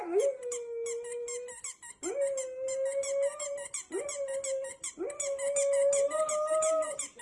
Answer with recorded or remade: recorded